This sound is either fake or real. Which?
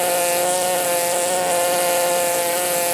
real